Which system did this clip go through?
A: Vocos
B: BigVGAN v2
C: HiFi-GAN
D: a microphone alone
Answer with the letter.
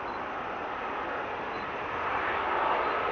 D